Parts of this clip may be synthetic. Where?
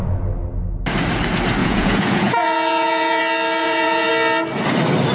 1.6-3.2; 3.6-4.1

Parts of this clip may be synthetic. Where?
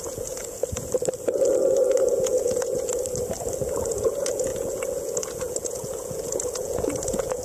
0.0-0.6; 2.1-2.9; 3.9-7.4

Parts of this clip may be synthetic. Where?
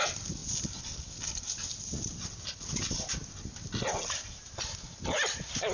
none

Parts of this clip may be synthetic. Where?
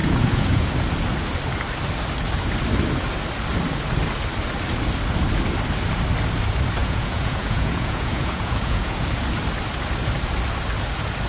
0.0-0.7; 6.8-9.1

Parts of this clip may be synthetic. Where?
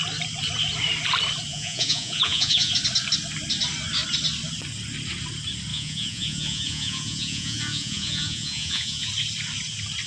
1.5-2.7; 5.7-9.1